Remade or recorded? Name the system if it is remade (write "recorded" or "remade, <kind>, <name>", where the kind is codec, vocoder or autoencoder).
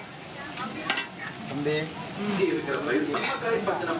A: recorded